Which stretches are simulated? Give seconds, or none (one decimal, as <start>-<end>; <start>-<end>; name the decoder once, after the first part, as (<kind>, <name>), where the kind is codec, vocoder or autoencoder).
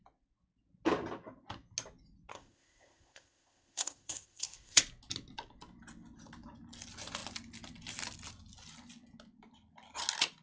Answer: 2.3-4.8 (codec, ZipCodec)